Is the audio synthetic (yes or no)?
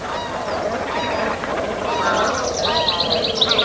no